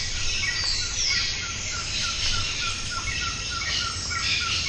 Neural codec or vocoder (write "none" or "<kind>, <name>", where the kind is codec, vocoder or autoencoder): none